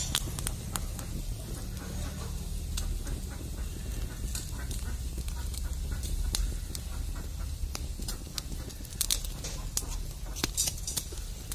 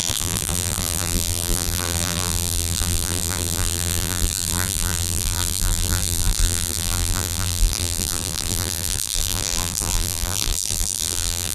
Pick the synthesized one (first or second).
second